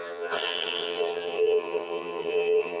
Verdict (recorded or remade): remade